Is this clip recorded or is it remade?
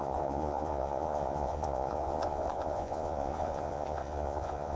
remade